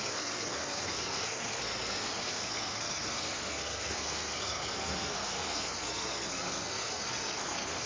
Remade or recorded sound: remade